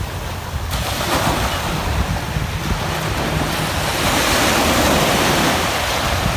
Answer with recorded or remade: recorded